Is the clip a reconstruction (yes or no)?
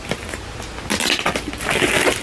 no